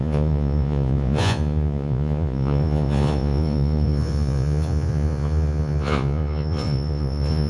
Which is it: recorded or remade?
remade